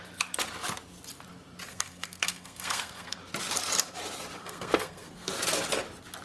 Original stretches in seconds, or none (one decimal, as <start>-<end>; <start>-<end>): 0.0-1.6; 3.2-4.4; 5.3-6.2